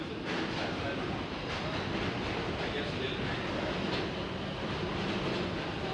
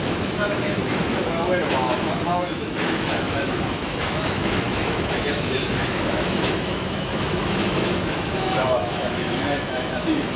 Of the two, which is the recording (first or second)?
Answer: first